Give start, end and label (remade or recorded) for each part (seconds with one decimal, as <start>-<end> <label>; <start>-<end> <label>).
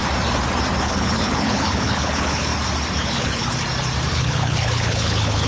0.0-0.8 recorded; 0.8-2.5 remade; 2.5-3.0 recorded; 3.0-3.4 remade; 3.4-4.1 recorded; 4.1-5.5 remade